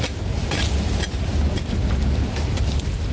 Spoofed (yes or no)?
no